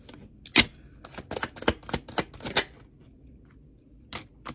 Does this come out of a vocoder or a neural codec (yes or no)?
no